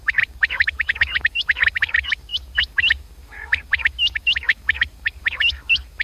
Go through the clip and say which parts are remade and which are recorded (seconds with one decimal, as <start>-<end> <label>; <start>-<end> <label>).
0.0-6.0 remade